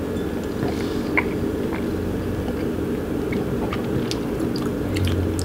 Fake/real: real